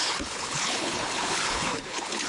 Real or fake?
fake